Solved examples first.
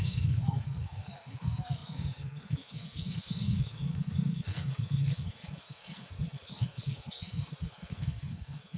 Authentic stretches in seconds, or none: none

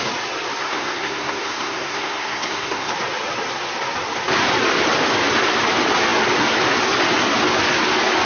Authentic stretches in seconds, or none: 0.0-0.6; 2.9-8.3

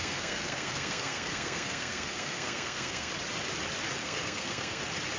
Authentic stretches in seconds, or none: 3.1-4.0; 4.8-5.2

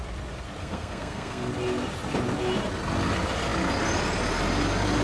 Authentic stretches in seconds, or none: 0.0-0.6; 1.5-5.0

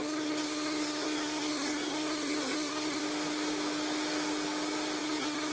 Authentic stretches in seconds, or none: 3.0-5.0

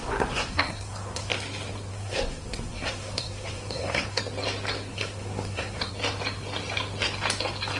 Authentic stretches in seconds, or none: 1.3-1.9; 4.2-4.9; 5.9-7.8

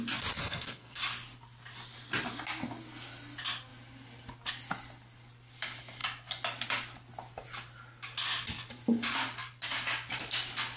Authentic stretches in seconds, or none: 0.0-0.4; 1.0-10.8